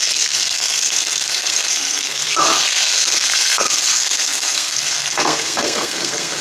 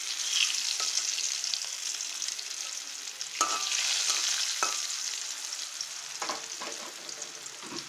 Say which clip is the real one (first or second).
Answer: second